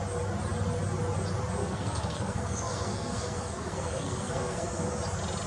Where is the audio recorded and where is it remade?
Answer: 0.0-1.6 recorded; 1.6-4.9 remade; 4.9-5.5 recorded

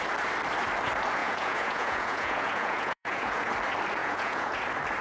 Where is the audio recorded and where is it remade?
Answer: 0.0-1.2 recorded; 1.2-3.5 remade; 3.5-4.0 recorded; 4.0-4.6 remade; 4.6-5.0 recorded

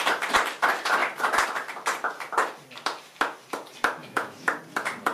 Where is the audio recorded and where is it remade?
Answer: 0.0-4.0 recorded; 4.0-4.6 remade; 4.6-5.1 recorded